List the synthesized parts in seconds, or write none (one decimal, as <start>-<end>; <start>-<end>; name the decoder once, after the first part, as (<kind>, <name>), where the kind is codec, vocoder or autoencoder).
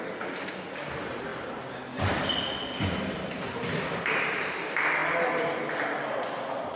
none